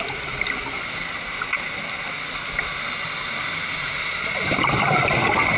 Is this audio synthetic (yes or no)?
no